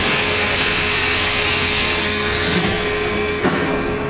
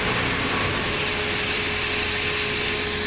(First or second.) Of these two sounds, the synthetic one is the first